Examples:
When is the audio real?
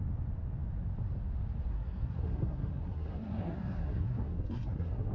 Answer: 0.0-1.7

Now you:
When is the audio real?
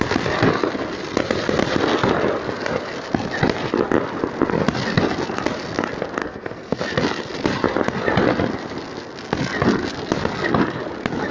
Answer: 0.0-6.2; 6.8-11.3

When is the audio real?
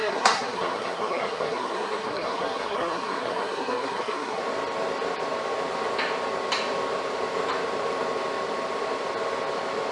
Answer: 4.4-9.9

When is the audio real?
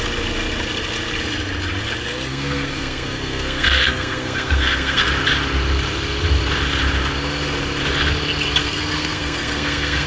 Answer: 0.0-2.3; 5.1-8.6